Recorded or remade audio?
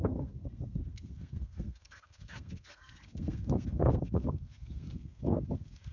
remade